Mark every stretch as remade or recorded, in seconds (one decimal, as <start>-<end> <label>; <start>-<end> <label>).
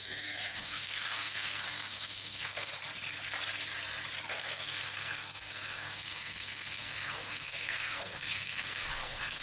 0.0-2.7 remade; 2.7-4.3 recorded; 4.3-9.4 remade